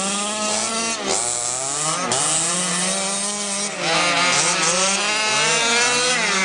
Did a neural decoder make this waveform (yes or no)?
no